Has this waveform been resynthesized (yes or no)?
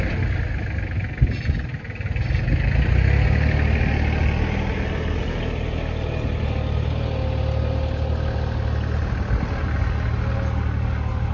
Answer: no